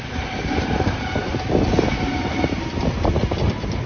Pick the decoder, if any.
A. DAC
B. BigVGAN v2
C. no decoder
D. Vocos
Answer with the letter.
C